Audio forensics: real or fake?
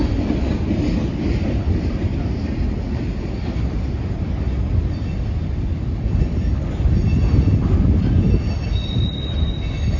real